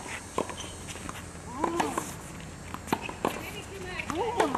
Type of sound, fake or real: real